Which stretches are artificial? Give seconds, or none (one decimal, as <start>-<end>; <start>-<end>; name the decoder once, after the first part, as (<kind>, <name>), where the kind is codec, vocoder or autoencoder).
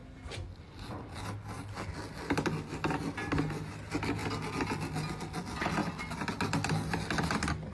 none